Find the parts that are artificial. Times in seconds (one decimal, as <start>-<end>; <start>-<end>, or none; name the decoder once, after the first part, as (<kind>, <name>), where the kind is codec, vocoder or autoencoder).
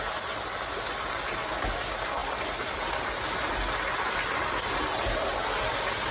none